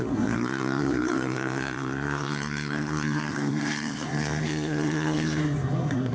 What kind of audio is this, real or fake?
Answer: fake